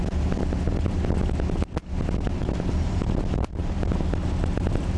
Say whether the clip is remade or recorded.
recorded